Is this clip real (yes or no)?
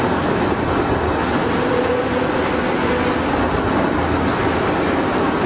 yes